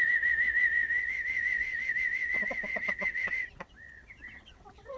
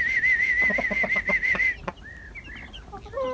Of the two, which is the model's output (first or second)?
first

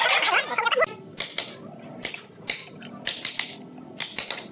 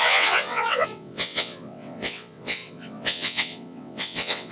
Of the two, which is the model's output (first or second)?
second